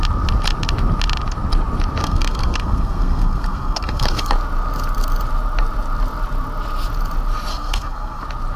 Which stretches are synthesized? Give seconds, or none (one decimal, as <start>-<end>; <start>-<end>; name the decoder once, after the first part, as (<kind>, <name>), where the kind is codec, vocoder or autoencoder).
2.0-4.3 (codec, SNAC); 7.5-8.2